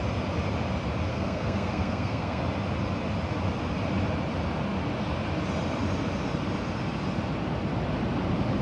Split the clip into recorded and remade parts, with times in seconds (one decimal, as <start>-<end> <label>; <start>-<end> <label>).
0.0-1.1 recorded; 1.1-2.4 remade; 2.4-8.6 recorded